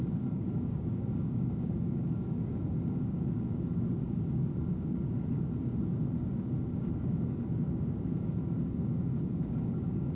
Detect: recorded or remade remade